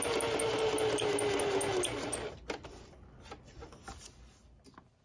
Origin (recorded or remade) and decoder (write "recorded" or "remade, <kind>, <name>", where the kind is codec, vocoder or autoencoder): recorded